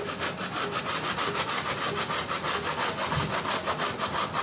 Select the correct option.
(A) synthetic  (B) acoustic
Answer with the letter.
B